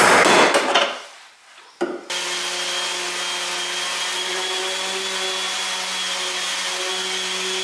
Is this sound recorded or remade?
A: recorded